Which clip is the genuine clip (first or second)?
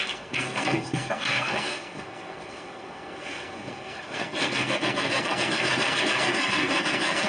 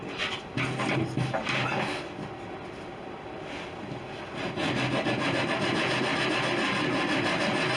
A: second